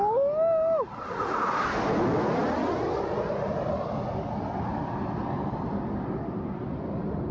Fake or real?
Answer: real